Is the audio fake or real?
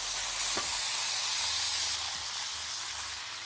real